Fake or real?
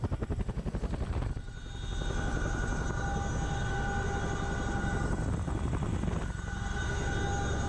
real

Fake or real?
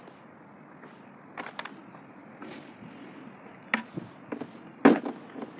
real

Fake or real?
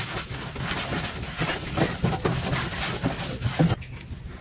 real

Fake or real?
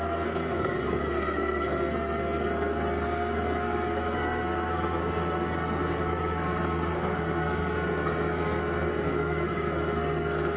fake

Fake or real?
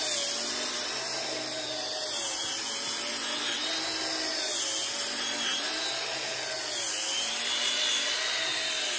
real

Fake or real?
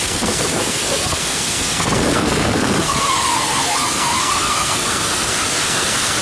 fake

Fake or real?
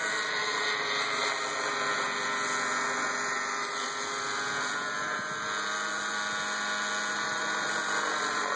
real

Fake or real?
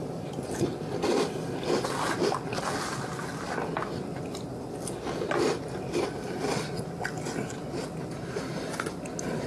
real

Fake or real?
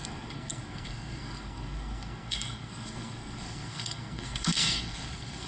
fake